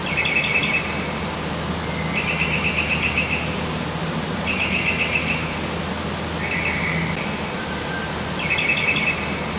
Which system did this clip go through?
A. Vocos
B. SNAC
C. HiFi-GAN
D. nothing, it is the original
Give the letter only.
D